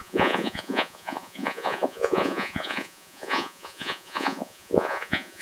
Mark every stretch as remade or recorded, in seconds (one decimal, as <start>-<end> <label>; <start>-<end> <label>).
0.0-5.4 remade

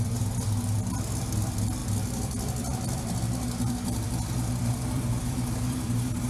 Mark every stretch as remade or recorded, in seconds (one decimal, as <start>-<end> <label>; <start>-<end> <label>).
0.0-6.3 remade

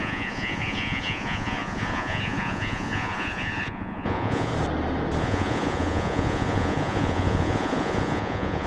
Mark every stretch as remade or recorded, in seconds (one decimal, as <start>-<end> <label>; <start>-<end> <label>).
0.0-4.5 remade; 4.5-5.2 recorded; 5.2-8.7 remade